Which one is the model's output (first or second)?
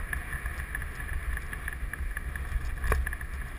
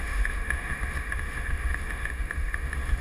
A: second